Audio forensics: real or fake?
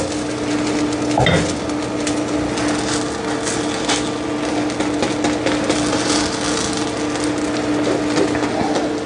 real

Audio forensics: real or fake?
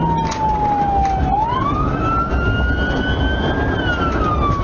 real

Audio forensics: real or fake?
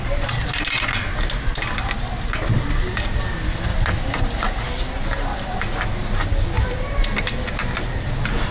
real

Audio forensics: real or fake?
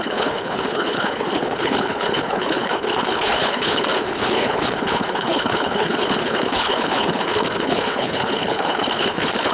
fake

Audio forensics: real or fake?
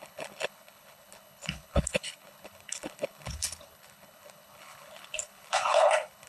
fake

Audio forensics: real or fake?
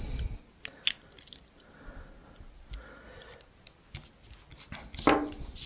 real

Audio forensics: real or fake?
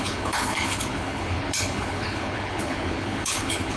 fake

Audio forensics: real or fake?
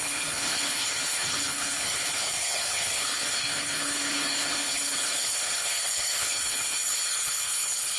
fake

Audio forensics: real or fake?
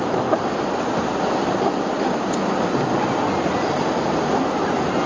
real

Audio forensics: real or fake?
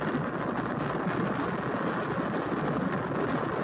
real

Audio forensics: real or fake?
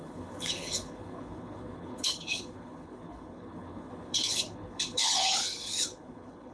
fake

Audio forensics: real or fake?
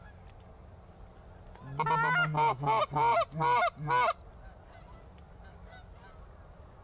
real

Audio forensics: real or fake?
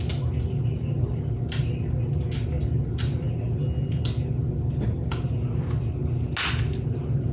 real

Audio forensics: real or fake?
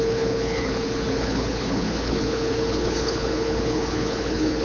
fake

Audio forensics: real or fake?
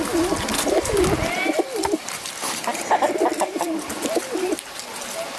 real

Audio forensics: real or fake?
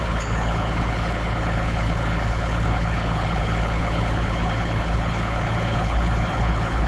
fake